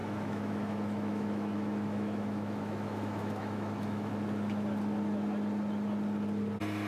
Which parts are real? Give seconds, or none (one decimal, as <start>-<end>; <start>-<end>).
4.1-6.9